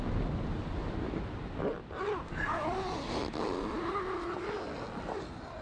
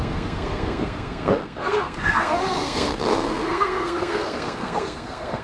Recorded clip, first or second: first